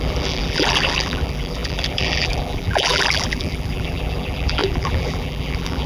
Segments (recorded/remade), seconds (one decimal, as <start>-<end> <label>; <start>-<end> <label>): 0.0-5.9 remade